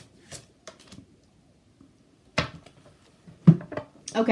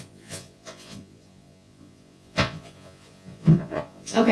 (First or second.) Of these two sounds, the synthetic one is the second